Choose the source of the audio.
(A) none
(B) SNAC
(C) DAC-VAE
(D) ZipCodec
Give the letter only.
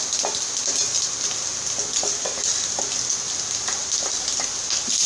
A